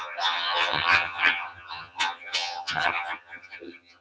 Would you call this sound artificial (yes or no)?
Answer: yes